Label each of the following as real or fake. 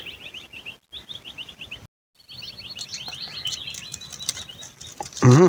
real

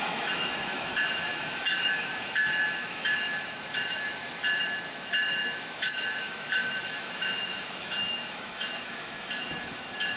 fake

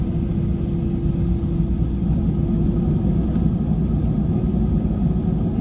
real